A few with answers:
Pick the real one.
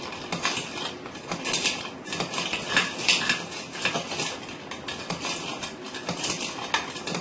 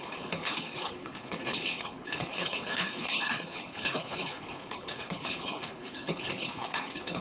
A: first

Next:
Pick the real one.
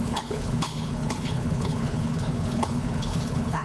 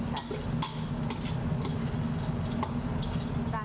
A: second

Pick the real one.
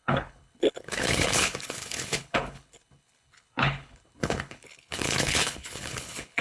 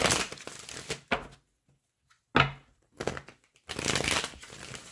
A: second